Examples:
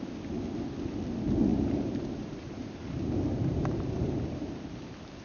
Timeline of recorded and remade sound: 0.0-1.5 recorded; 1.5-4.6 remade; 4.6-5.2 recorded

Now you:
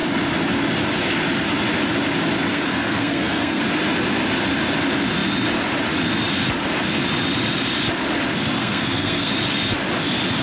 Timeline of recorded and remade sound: 0.0-2.5 recorded; 2.5-3.6 remade; 3.6-8.6 recorded; 8.6-9.3 remade; 9.3-10.4 recorded

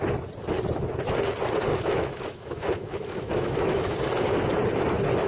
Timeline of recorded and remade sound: 0.0-1.7 recorded; 1.7-3.8 remade; 3.8-5.3 recorded

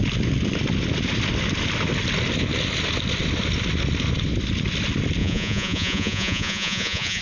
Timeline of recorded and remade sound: 0.0-5.2 recorded; 5.2-7.2 remade

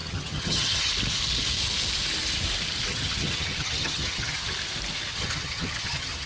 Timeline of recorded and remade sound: 0.0-0.9 remade; 0.9-2.9 recorded; 2.9-4.5 remade; 4.5-5.1 recorded; 5.1-6.3 remade

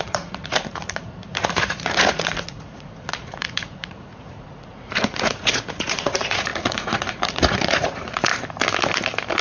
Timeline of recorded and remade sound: 0.0-8.3 remade; 8.3-9.4 recorded

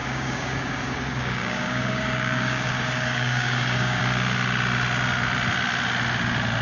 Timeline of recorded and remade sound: 0.0-4.0 remade; 4.0-6.6 recorded